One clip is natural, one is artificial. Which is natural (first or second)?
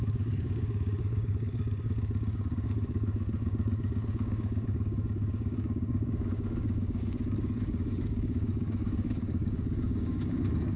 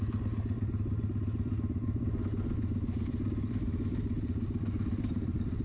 second